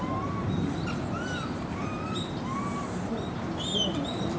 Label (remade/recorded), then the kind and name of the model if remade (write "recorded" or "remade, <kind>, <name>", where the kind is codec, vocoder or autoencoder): recorded